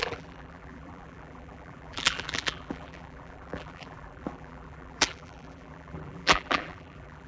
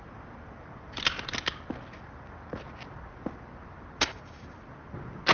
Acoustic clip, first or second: second